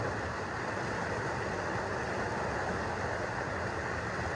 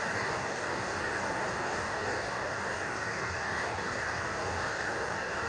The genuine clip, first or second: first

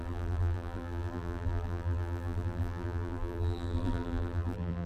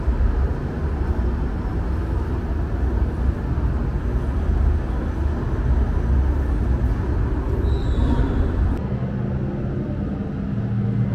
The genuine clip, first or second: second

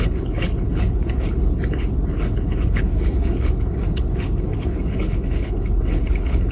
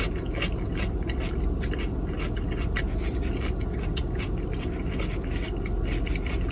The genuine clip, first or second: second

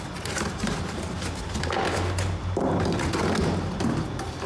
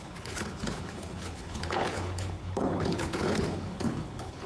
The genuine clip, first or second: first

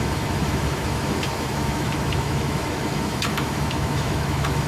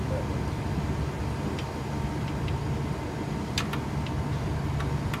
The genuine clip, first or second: second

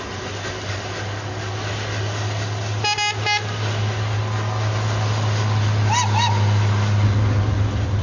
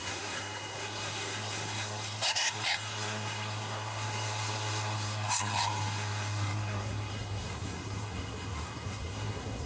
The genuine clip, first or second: first